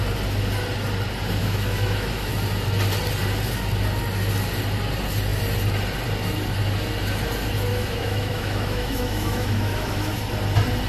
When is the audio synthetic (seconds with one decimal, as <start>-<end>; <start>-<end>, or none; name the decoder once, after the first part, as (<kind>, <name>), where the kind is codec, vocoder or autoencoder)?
1.4-2.3 (autoencoder, DAC-VAE); 7.7-10.1